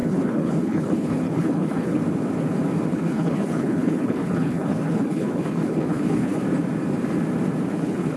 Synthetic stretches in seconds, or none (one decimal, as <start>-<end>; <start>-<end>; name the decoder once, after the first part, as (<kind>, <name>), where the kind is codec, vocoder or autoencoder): 0.0-2.0 (codec, HILCodec); 2.9-6.4; 7.7-8.2